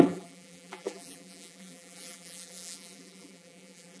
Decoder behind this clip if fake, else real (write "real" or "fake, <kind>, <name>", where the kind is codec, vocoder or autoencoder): fake, vocoder, BigVGAN v2